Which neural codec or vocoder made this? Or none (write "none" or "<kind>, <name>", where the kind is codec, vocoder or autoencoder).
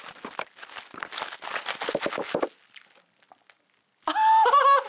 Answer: none